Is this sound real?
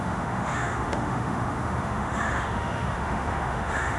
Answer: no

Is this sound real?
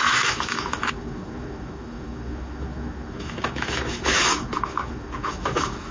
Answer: no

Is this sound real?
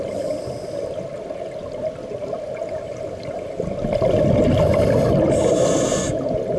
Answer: yes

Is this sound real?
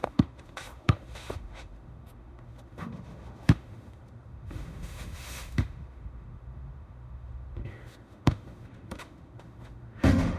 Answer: no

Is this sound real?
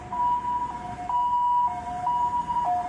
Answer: yes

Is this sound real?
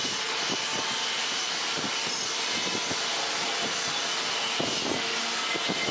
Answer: yes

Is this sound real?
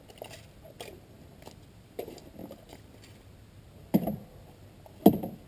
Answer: yes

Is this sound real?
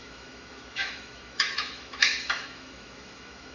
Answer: no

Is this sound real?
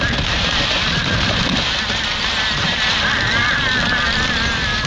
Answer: yes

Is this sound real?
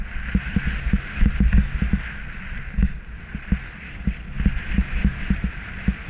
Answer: yes